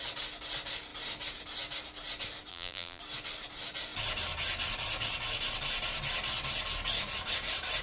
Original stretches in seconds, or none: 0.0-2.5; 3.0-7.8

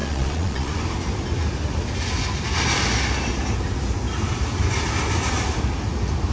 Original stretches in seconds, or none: 0.8-6.3

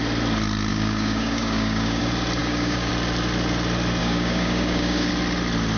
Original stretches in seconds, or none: 0.0-0.7; 2.0-2.4; 2.9-4.0; 5.1-5.8

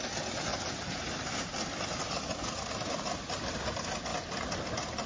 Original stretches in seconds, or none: 0.0-5.1